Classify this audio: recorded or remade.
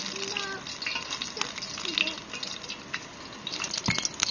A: recorded